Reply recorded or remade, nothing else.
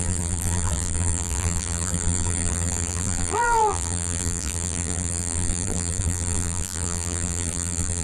remade